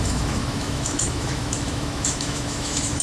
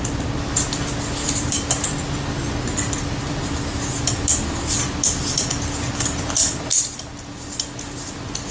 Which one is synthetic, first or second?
first